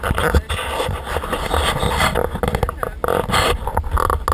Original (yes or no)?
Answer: yes